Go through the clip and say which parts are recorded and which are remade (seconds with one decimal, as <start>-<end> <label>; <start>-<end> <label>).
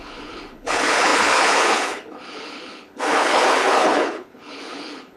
0.0-5.2 remade